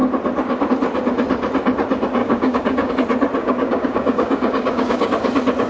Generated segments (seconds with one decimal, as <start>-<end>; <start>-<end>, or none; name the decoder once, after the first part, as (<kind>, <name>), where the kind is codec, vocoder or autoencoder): 2.2-2.9 (codec, DAC); 3.4-5.1